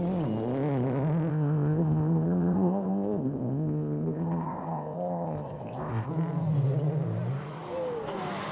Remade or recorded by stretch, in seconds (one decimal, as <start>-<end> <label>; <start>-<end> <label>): 0.0-1.3 recorded; 1.3-6.1 remade; 6.1-8.5 recorded